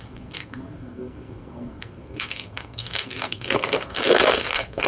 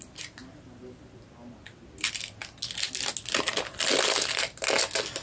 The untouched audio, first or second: second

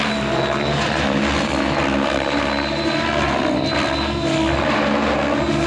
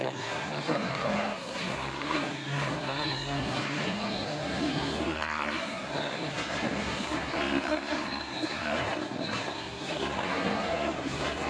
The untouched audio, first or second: first